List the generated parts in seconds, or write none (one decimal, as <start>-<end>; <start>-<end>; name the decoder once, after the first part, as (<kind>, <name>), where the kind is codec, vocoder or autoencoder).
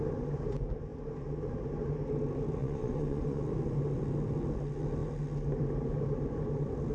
2.6-3.4 (vocoder, Vocos)